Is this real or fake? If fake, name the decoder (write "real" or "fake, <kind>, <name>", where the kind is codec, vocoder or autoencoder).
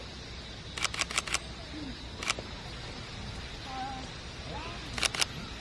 real